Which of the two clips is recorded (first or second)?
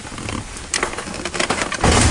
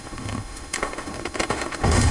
first